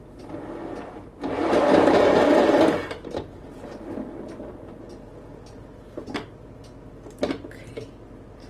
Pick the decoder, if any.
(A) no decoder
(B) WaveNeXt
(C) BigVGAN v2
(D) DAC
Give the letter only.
A